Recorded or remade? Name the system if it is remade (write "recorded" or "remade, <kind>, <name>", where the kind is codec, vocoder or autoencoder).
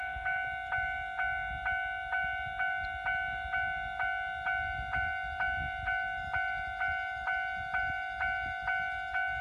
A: recorded